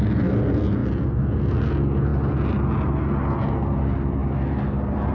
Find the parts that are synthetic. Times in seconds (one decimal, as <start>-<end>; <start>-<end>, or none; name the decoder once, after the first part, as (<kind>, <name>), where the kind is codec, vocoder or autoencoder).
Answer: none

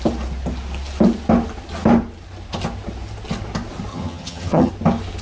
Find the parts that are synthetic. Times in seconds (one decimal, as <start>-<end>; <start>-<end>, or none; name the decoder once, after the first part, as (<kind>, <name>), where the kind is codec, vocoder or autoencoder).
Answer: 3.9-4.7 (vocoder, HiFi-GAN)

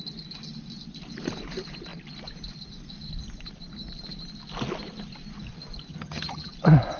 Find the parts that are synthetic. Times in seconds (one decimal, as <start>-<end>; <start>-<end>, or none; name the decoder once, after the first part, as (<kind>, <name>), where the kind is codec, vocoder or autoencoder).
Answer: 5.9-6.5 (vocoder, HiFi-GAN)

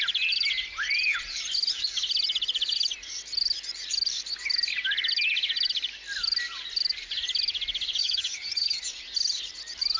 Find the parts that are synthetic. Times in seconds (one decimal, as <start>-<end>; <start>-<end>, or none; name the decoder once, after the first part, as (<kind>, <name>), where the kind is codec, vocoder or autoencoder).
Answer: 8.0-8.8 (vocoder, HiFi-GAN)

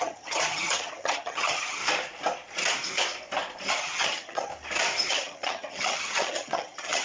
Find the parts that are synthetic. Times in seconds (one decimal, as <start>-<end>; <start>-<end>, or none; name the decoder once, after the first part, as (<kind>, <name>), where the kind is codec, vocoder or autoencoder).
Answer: 0.0-1.8 (vocoder, HiFi-GAN); 3.7-4.5; 5.1-7.0

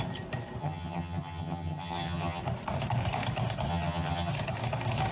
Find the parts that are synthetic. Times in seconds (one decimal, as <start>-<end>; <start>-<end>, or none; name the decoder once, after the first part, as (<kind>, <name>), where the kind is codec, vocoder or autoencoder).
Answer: 0.6-2.4 (vocoder, HiFi-GAN); 3.7-4.3